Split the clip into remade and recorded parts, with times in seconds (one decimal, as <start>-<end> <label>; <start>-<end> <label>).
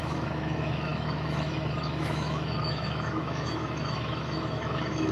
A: 0.0-5.1 remade